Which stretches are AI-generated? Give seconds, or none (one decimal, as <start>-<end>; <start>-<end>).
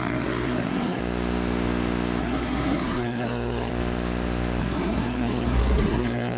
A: 0.0-1.0; 2.2-3.7; 4.6-6.4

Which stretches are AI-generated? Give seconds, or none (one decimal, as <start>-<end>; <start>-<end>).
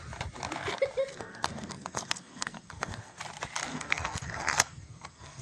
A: 1.1-3.2; 3.7-5.4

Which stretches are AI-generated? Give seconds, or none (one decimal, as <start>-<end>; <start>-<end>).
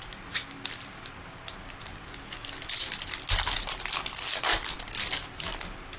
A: none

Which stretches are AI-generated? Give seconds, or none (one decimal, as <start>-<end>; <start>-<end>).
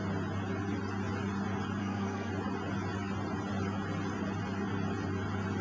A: 1.8-2.3